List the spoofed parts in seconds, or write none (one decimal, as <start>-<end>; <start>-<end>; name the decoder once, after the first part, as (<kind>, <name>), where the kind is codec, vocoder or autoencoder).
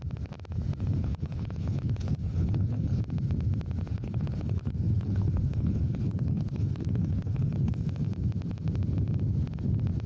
1.0-3.0 (codec, HILCodec); 3.9-7.7